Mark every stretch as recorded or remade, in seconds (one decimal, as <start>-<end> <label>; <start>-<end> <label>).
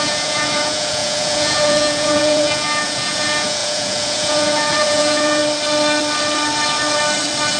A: 0.0-5.4 remade; 5.4-7.6 recorded